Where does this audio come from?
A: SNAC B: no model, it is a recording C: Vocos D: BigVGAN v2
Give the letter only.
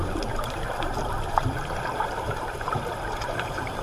D